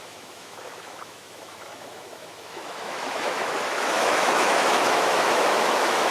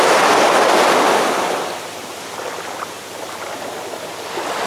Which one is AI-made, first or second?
first